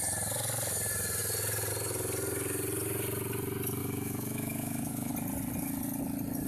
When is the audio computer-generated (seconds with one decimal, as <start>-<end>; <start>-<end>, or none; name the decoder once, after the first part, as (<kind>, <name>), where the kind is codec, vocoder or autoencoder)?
3.8-5.1 (autoencoder, DAC-VAE)